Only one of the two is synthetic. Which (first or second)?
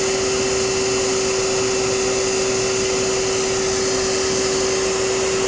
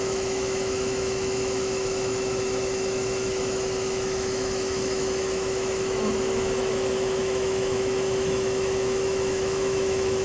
second